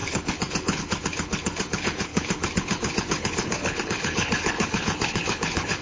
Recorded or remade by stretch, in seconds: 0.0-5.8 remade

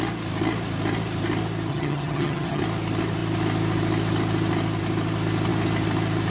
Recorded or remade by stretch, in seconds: 0.0-1.7 recorded; 1.7-2.6 remade; 2.6-6.3 recorded

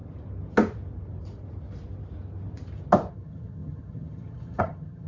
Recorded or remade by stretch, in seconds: 0.0-3.1 recorded; 3.1-5.1 remade

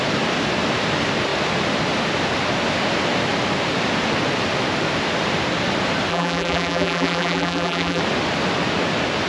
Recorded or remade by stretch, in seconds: 0.0-6.1 recorded; 6.1-8.0 remade; 8.0-9.3 recorded